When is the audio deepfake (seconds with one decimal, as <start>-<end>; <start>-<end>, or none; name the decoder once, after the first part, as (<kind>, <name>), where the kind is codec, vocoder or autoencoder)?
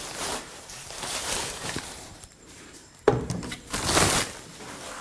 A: 0.0-3.7 (vocoder, BigVGAN v2)